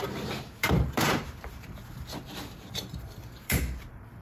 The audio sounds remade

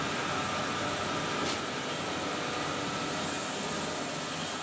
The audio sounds recorded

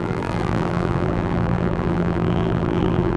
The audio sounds remade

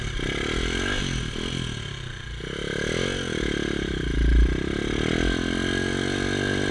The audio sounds recorded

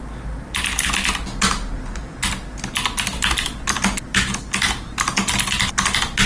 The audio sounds recorded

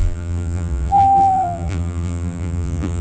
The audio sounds remade